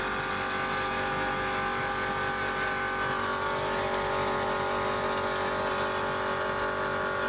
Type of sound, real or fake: real